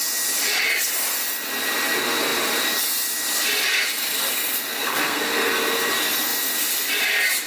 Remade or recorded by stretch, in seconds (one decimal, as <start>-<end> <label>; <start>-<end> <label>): 0.0-4.7 recorded; 4.7-5.5 remade; 5.5-7.5 recorded